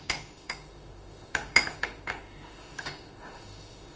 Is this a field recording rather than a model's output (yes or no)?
no